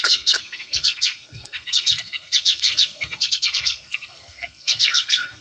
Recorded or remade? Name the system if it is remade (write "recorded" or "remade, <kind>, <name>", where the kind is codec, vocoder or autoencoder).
remade, codec, SNAC